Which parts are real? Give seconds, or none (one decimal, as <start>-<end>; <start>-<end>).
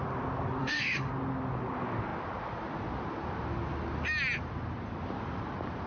0.0-0.6; 1.1-5.9